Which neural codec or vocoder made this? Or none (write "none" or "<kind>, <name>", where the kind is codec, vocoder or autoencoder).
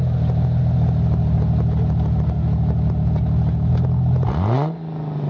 none